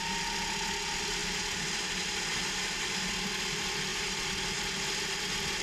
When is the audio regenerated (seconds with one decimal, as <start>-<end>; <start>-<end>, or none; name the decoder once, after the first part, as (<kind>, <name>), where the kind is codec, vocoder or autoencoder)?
1.2-1.9 (vocoder, BigVGAN v2); 3.9-4.8